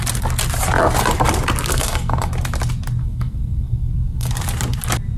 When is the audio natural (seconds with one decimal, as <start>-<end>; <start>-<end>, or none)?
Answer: 0.0-1.7; 2.3-3.0; 4.3-5.2